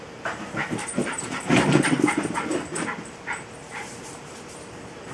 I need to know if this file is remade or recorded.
remade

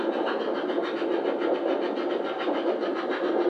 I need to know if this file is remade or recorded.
recorded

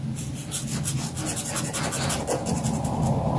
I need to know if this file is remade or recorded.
recorded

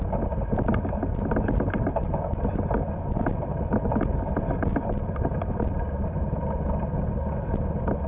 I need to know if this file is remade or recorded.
recorded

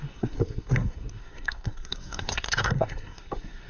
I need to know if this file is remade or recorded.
remade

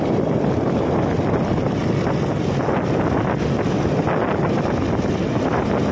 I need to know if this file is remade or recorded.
recorded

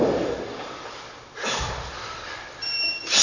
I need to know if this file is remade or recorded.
remade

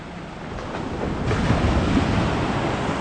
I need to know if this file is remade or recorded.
recorded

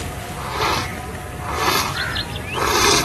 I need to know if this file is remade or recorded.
recorded